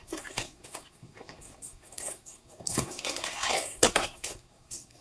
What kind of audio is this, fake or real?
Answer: fake